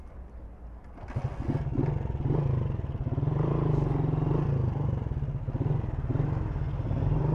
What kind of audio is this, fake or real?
real